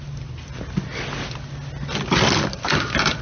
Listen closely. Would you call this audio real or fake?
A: real